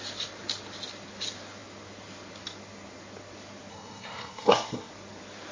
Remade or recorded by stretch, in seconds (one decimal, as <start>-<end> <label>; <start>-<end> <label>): 0.0-3.7 recorded; 3.7-4.9 remade; 4.9-5.5 recorded